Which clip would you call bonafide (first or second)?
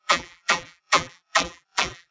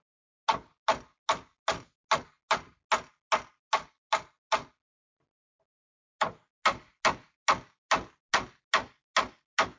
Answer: second